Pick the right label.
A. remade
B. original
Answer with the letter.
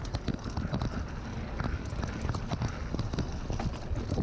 B